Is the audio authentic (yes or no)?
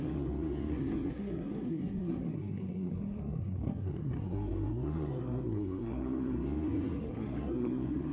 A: no